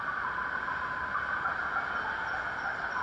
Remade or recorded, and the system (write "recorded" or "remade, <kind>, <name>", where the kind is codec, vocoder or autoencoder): recorded